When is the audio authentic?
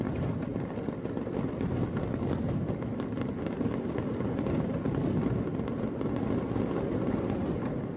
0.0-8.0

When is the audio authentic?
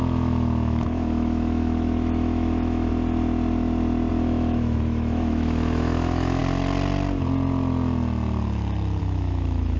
2.9-4.1; 6.4-9.0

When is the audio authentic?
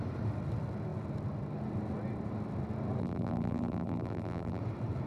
0.0-3.0; 4.6-5.1